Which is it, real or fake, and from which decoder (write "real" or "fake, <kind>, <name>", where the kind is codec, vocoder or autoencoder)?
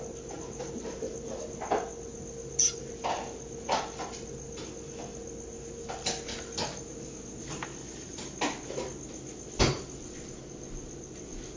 real